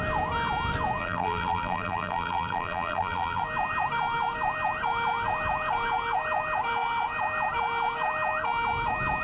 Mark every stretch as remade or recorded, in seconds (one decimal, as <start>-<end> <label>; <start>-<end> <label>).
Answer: 0.0-1.0 recorded; 1.0-3.4 remade; 3.4-9.2 recorded